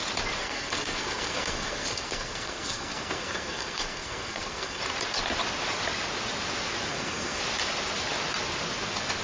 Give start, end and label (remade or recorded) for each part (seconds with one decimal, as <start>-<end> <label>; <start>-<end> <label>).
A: 0.0-0.4 recorded; 0.4-4.8 remade; 4.8-6.9 recorded; 6.9-7.4 remade; 7.4-9.2 recorded